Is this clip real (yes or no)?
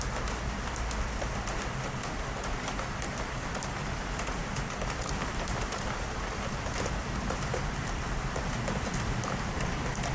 yes